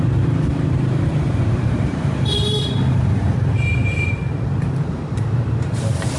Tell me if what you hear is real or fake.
fake